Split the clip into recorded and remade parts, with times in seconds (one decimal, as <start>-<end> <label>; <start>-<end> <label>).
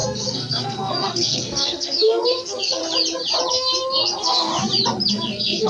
0.0-2.8 remade; 2.8-3.5 recorded; 3.5-4.5 remade; 4.5-5.1 recorded; 5.1-5.7 remade